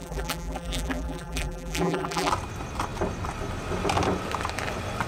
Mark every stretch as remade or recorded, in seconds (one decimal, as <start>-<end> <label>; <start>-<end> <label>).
0.0-2.3 remade; 2.3-5.1 recorded